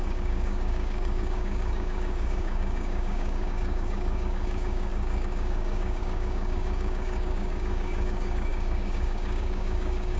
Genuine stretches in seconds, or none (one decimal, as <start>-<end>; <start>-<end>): none